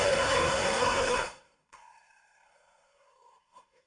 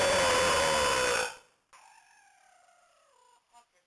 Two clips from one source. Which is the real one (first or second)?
second